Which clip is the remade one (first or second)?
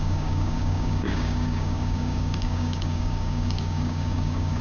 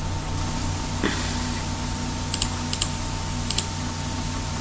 first